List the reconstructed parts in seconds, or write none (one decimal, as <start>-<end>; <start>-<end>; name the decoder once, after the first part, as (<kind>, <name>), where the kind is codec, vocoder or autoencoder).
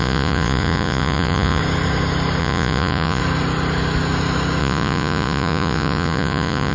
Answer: 0.0-1.6 (vocoder, Vocos); 2.4-3.2; 4.6-6.7